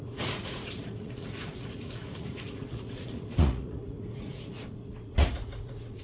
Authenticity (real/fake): fake